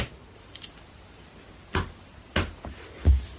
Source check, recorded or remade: recorded